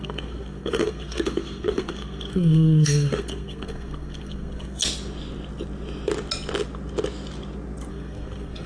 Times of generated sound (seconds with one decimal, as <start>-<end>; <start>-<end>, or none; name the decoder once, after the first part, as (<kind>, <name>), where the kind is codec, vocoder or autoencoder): 0.0-4.8 (codec, SNAC); 7.9-8.7